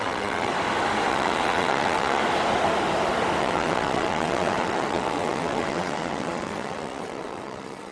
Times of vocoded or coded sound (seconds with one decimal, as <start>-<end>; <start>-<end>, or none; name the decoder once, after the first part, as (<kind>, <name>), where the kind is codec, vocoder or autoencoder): 0.0-0.5 (vocoder, WaveNeXt); 1.1-2.2; 3.4-7.9